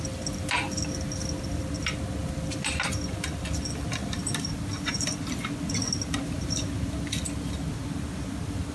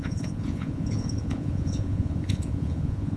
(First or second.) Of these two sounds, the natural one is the first